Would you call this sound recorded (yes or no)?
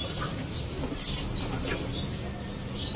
yes